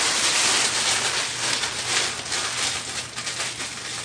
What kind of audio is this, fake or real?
real